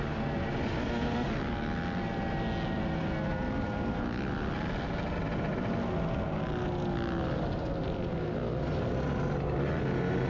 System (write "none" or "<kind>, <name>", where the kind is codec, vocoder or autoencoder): none